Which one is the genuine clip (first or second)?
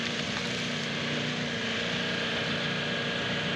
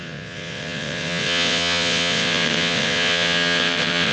first